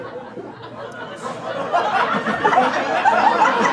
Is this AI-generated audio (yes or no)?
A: no